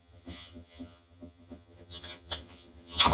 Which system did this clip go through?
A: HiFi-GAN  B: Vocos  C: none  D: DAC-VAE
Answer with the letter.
A